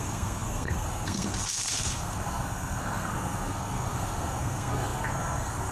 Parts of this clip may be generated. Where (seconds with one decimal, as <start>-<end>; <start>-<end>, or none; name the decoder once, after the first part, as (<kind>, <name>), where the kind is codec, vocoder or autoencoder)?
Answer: 0.0-5.7 (codec, SNAC)

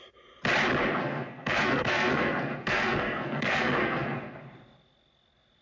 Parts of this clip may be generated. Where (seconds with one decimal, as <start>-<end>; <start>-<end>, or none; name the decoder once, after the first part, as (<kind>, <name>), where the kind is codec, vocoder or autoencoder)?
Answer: 1.0-4.4 (codec, SNAC)